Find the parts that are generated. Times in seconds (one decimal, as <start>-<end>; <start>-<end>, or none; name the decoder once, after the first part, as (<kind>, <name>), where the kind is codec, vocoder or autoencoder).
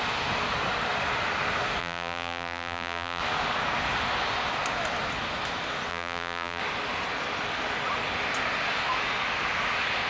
1.8-3.2 (vocoder, BigVGAN v2); 5.9-6.6